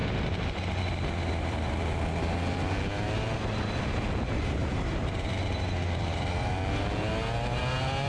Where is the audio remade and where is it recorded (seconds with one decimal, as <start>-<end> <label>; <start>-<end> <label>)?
0.0-8.1 recorded